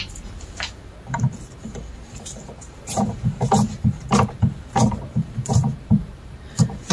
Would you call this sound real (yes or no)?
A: no